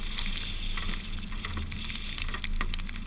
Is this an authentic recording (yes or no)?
yes